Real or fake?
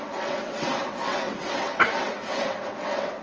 fake